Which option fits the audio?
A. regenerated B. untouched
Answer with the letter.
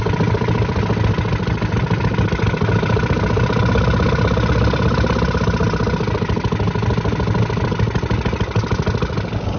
B